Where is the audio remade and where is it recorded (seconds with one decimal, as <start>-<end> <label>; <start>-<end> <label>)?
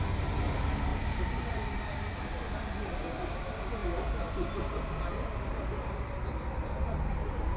0.0-7.6 recorded